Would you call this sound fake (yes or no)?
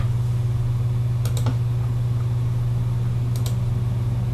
no